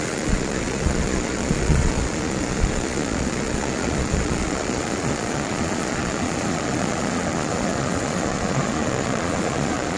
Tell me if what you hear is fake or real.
fake